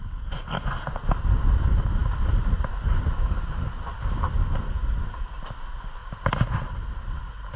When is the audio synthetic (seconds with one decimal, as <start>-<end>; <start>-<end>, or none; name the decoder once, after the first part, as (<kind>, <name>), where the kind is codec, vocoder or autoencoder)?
none